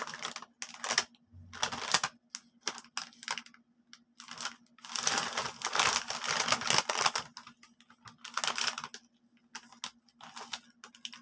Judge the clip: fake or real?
real